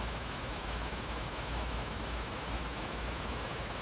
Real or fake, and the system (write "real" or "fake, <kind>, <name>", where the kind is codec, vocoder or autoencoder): fake, autoencoder, DAC-VAE